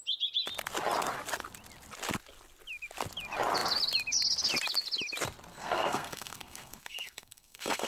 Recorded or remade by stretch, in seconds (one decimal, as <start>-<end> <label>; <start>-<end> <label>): 0.0-5.5 recorded; 5.5-7.9 remade